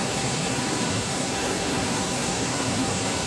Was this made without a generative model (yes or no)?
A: no